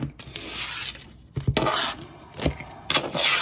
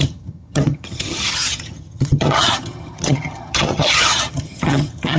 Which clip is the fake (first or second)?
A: second